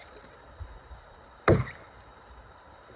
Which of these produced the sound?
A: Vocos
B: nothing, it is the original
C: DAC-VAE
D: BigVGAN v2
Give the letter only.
D